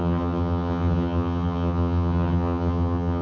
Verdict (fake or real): fake